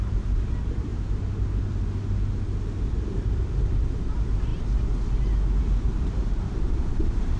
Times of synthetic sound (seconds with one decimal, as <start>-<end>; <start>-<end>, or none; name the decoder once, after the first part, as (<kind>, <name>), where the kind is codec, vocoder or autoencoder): 0.0-0.9 (vocoder, BigVGAN v2); 3.8-4.5; 5.6-7.4